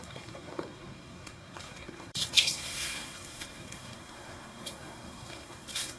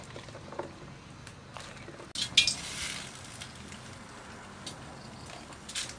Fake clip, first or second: first